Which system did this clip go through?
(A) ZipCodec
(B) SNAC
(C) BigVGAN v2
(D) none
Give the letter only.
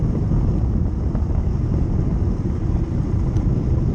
D